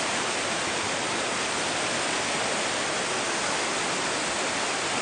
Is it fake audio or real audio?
real